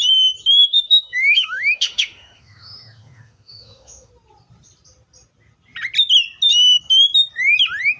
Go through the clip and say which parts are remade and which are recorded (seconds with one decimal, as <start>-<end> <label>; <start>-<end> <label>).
0.0-0.6 recorded; 0.6-4.1 remade; 4.1-8.0 recorded